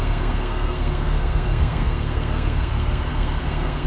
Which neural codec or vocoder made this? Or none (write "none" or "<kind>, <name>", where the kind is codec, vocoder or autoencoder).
codec, SNAC